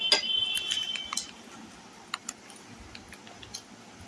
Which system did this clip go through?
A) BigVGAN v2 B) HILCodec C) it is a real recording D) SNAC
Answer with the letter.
C